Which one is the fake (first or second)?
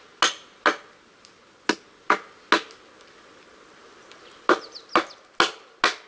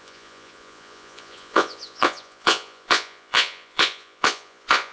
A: second